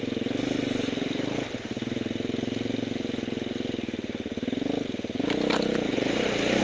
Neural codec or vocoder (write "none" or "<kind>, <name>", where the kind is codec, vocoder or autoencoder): none